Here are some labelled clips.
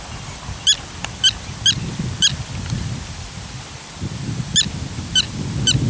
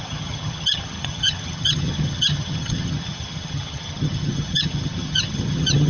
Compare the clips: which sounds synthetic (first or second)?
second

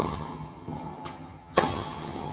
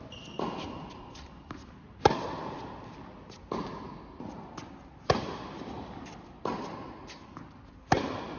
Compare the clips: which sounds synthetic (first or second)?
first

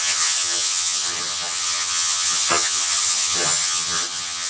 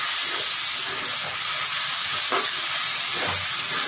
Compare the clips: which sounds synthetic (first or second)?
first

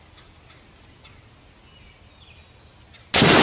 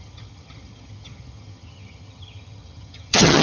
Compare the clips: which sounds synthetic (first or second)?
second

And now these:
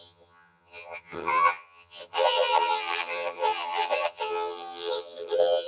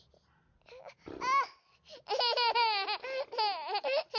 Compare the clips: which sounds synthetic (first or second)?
first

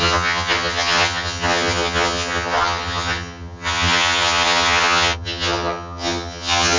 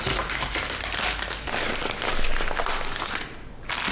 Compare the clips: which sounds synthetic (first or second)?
first